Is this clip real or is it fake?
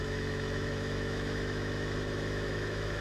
fake